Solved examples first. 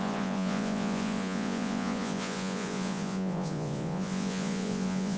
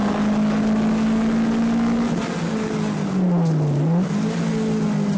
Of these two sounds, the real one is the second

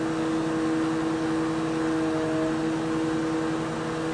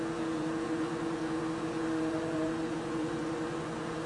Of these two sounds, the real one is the first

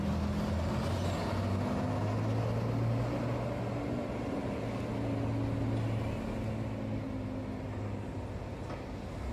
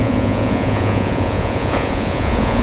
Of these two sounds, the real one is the first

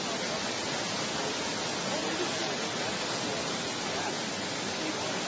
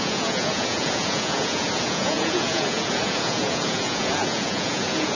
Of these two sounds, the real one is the first